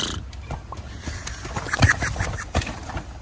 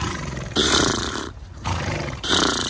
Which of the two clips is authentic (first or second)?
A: first